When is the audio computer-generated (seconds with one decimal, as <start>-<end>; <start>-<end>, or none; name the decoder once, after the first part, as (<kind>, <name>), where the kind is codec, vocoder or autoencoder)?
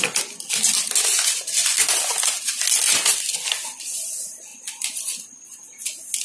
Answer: none